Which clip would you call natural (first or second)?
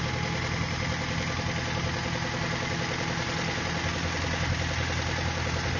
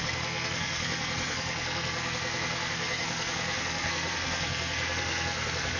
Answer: first